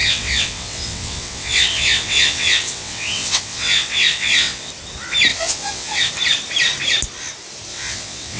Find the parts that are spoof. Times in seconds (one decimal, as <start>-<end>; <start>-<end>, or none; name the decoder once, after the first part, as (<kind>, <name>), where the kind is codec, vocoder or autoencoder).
0.0-4.7 (vocoder, WaveNeXt); 5.3-6.1; 7.7-8.4